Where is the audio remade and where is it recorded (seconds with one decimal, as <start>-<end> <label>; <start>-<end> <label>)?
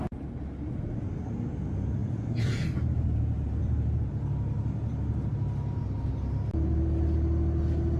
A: 0.0-2.0 recorded; 2.0-4.1 remade; 4.1-8.0 recorded